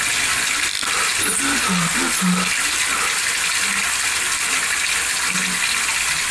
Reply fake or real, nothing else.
real